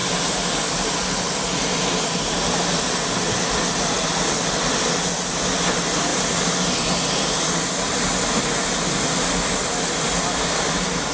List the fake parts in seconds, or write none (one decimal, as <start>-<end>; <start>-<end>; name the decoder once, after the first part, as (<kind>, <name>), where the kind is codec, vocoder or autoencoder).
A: none